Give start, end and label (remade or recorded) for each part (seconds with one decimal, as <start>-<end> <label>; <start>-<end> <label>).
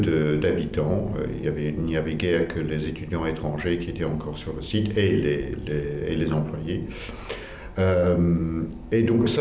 0.0-9.4 recorded